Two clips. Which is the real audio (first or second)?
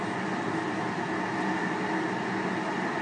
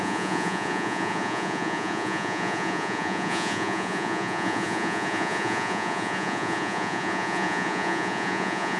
first